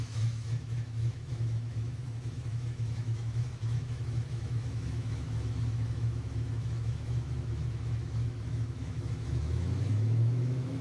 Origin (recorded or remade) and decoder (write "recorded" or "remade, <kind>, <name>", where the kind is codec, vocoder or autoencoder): remade, autoencoder, DAC-VAE